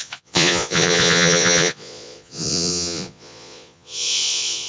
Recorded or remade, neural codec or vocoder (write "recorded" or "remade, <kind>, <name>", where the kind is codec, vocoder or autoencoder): remade, vocoder, Vocos